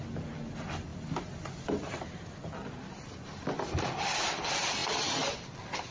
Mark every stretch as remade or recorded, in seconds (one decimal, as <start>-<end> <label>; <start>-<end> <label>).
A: 0.0-5.9 recorded